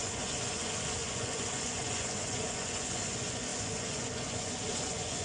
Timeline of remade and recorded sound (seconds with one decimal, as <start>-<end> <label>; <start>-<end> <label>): 0.0-5.2 remade